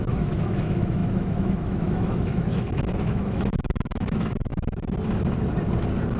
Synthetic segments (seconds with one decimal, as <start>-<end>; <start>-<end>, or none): 0.0-4.5